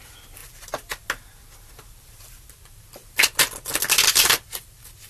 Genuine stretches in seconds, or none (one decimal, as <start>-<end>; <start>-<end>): 0.0-5.1